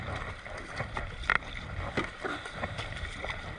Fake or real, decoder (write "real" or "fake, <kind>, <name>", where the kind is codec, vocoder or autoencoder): real